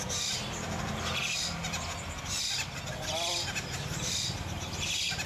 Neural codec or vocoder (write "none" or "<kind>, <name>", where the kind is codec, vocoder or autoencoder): none